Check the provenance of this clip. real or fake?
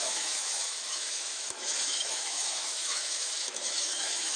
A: fake